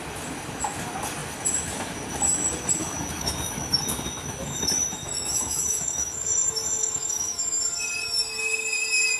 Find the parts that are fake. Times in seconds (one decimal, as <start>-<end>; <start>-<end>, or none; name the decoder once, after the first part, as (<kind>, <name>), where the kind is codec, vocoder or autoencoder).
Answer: 2.8-7.7 (autoencoder, DAC-VAE)